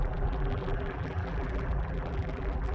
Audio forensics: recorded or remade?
remade